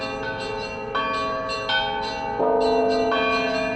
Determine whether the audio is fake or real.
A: real